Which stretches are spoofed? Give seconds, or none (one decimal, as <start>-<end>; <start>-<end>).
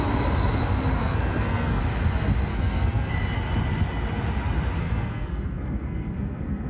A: 1.0-1.8; 2.5-3.1; 4.8-6.7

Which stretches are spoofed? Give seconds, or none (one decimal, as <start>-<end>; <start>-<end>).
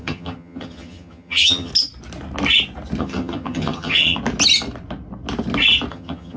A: 0.0-1.7; 3.0-4.2; 5.9-6.4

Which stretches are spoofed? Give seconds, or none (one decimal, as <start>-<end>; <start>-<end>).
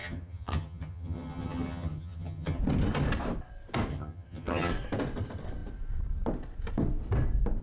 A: 0.0-2.6; 3.9-4.7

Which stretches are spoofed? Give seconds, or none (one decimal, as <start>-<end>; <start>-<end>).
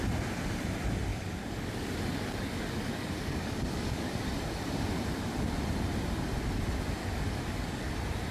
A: 1.1-4.1; 7.0-7.9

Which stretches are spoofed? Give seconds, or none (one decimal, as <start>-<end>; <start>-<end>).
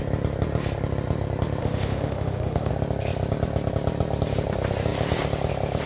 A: 1.6-2.7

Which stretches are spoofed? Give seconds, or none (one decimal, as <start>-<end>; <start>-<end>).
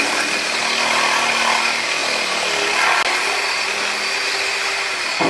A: none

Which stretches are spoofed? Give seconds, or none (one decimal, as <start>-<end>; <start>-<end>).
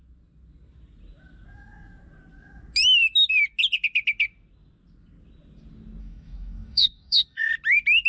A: 6.0-7.5